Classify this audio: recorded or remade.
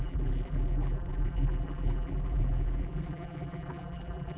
remade